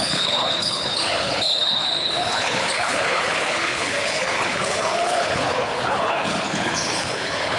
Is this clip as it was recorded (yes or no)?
no